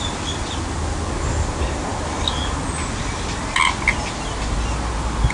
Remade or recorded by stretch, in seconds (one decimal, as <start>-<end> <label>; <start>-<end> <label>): 0.0-5.3 recorded